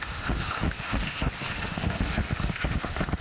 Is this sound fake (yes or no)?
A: yes